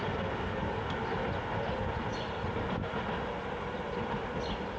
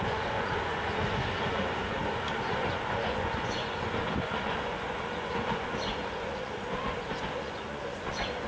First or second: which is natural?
first